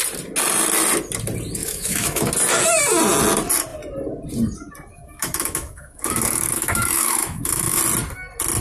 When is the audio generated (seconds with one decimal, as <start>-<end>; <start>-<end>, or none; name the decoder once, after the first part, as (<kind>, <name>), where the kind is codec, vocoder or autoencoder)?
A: 1.6-2.3 (autoencoder, DAC-VAE); 4.9-7.8